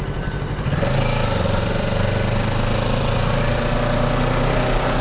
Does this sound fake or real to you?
real